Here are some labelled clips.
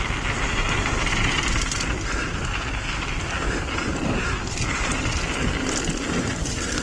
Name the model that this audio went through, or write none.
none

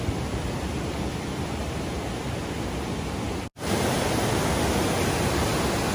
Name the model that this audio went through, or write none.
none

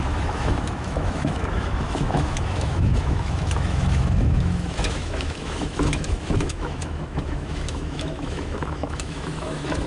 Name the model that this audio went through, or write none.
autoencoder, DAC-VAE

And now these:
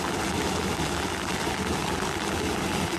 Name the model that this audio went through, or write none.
none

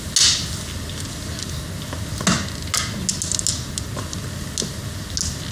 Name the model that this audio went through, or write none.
none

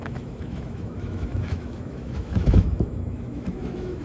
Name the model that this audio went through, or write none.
autoencoder, DAC-VAE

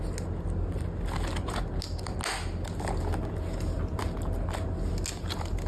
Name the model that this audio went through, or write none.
none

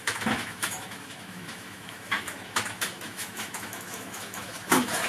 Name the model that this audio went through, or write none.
autoencoder, DAC-VAE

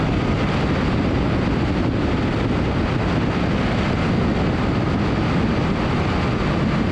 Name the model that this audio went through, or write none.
none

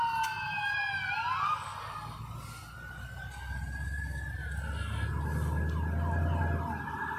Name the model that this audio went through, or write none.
none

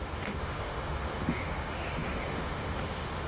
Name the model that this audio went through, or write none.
autoencoder, DAC-VAE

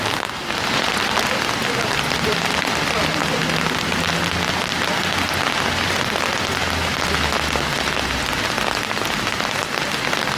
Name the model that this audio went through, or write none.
none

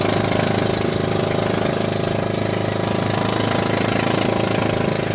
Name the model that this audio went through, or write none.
none